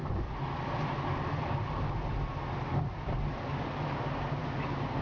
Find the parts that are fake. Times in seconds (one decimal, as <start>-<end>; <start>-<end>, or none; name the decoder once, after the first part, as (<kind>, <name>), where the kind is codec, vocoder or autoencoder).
none